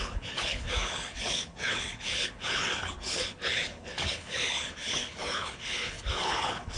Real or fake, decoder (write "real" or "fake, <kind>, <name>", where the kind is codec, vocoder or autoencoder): fake, codec, HILCodec